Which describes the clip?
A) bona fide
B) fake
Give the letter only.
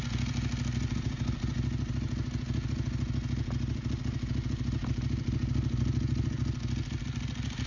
A